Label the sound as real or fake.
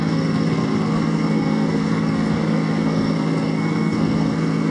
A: fake